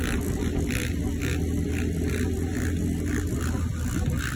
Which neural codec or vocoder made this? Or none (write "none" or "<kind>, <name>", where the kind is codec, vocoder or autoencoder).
none